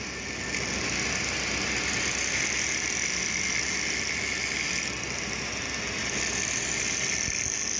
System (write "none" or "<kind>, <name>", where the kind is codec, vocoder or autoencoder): none